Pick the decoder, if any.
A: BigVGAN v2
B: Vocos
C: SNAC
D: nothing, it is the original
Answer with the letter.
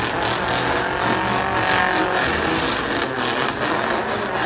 D